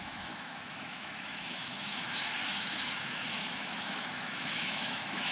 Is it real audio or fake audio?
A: fake